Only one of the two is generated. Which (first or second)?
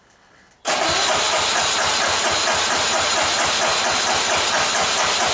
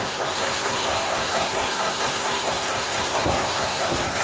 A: second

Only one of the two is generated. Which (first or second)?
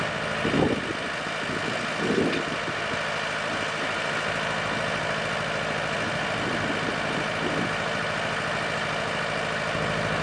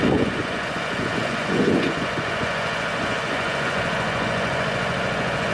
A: second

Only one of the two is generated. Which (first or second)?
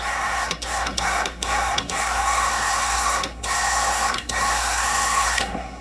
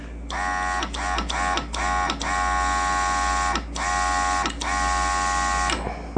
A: first